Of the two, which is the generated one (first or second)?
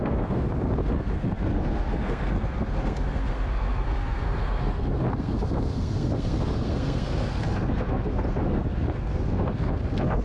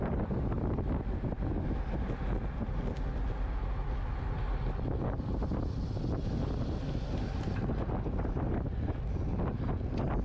first